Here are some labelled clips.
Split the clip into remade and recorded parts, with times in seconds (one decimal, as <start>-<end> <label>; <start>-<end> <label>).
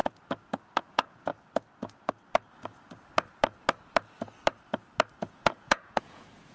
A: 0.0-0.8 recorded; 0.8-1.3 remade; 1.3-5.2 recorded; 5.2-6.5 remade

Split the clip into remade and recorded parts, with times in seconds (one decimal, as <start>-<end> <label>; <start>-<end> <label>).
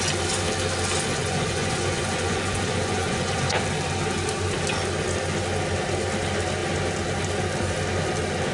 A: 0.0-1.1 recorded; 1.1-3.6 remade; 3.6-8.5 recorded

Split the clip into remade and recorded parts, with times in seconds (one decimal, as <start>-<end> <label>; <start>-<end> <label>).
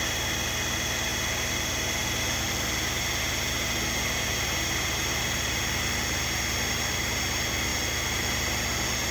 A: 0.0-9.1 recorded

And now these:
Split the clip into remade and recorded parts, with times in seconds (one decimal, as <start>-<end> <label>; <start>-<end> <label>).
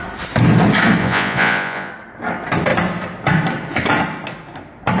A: 0.0-1.0 recorded; 1.0-1.9 remade; 1.9-5.0 recorded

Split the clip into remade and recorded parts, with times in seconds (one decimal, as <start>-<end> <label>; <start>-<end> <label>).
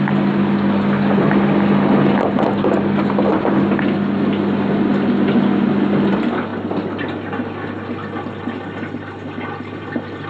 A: 0.0-10.3 recorded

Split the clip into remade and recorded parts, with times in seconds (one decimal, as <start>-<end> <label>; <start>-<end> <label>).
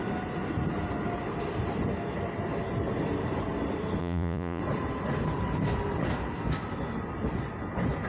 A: 0.0-4.0 recorded; 4.0-4.6 remade; 4.6-8.1 recorded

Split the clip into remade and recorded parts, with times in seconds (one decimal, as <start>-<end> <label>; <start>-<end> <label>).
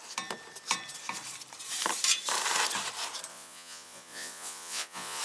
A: 0.0-3.3 recorded; 3.3-5.2 remade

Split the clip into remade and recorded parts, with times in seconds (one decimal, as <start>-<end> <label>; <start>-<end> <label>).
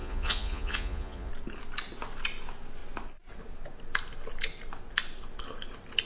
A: 0.0-1.3 remade; 1.3-6.1 recorded